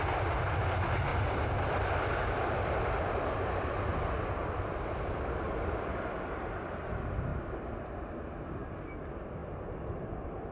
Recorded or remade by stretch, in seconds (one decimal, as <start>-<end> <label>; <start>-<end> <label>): 0.0-1.1 recorded; 1.1-3.0 remade; 3.0-3.9 recorded; 3.9-5.4 remade; 5.4-9.4 recorded; 9.4-10.1 remade; 10.1-10.5 recorded